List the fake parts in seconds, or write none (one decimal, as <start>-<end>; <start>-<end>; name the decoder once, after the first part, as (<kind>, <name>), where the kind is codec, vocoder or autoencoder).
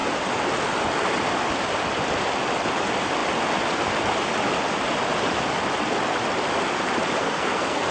7.2-7.9 (codec, SNAC)